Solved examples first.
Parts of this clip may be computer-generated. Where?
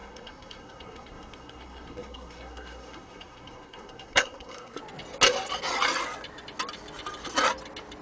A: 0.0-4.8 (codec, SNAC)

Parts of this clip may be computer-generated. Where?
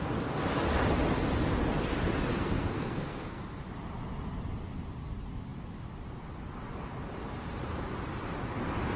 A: 2.3-3.4 (codec, SNAC)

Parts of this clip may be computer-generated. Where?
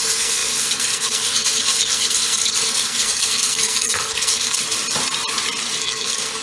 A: 0.0-4.6 (codec, SNAC); 5.8-6.4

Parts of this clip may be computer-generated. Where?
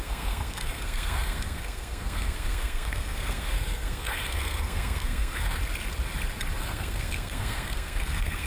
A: 0.0-5.6 (codec, SNAC); 6.6-8.5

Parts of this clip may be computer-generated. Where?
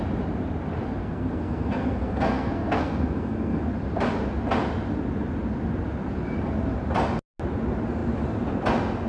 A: 1.0-3.6 (codec, SNAC)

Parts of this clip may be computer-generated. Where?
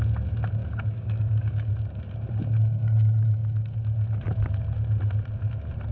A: 0.6-1.7 (codec, DAC)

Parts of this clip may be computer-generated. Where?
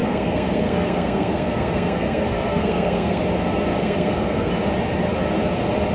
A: 0.0-3.2 (codec, SNAC); 3.7-4.5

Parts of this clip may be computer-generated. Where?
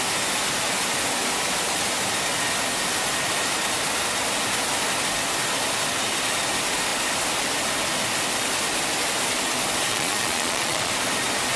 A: 9.9-10.9 (vocoder, Vocos)